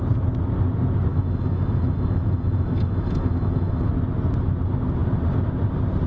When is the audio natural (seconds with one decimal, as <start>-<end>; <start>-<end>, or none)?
0.0-1.1; 3.9-6.1